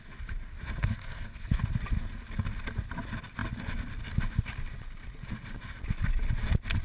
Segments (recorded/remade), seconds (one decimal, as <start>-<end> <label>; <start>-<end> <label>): 0.0-0.8 recorded; 0.8-1.6 remade; 1.6-6.8 recorded